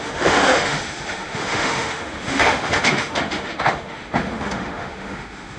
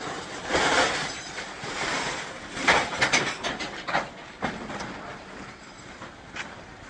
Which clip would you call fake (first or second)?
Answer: first